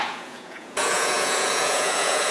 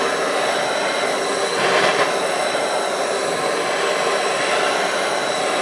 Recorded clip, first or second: second